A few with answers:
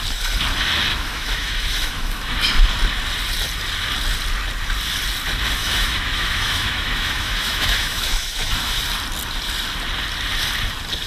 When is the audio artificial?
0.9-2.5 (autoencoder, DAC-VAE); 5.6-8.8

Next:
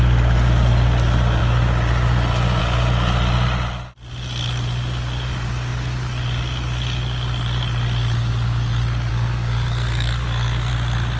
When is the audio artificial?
9.1-10.7 (codec, SNAC)

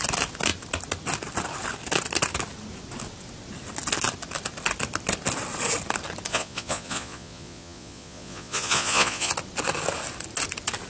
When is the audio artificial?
6.3-9.3 (vocoder, Vocos)

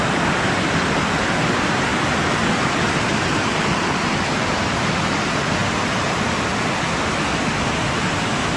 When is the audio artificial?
none